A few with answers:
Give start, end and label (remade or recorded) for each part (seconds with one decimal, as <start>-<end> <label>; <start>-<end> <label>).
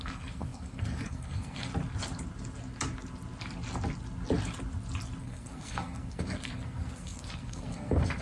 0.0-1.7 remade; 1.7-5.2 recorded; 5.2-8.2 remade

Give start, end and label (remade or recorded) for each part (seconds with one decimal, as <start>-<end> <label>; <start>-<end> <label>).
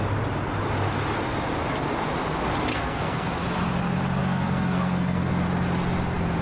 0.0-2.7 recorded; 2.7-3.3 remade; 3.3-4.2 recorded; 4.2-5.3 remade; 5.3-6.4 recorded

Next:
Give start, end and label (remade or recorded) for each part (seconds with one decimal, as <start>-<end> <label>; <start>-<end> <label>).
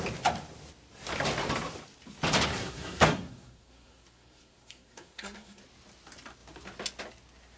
0.0-2.5 recorded; 2.5-5.6 remade; 5.6-7.6 recorded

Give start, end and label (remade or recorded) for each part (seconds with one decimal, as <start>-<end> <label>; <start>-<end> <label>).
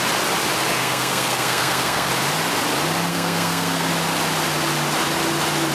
0.0-0.8 recorded; 0.8-2.1 remade; 2.1-3.1 recorded; 3.1-3.9 remade; 3.9-5.7 recorded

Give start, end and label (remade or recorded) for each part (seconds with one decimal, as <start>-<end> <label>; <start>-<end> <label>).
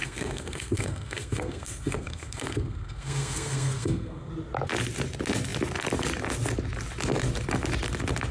0.0-4.3 remade; 4.3-8.3 recorded